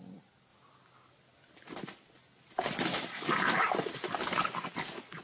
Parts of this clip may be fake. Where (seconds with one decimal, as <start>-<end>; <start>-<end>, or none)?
none